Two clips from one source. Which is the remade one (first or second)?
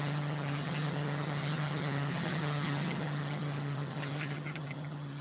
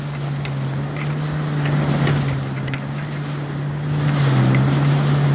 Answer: first